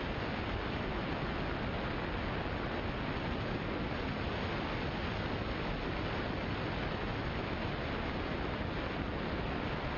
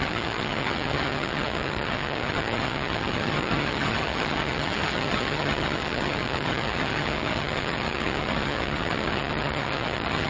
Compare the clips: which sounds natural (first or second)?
first